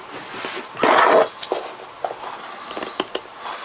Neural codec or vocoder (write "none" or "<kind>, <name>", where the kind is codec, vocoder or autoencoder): none